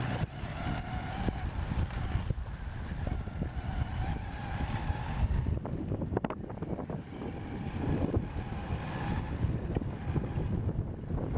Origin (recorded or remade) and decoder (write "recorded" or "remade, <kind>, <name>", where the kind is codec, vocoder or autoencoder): recorded